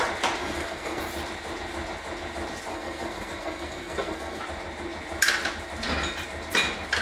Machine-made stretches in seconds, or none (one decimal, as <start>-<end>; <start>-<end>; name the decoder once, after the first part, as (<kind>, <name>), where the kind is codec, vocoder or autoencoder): 0.4-1.1 (codec, SNAC); 2.7-4.4